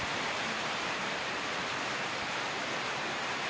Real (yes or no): no